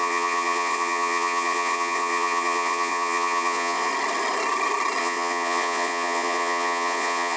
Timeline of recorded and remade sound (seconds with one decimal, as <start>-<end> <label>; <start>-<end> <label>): 0.0-3.9 remade; 3.9-5.0 recorded; 5.0-7.4 remade